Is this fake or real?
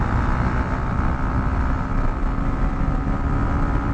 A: real